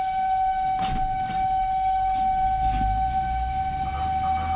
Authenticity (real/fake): real